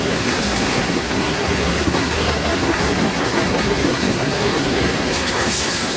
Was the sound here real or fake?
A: fake